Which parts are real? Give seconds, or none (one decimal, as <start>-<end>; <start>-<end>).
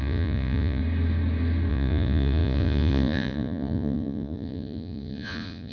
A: 0.8-1.7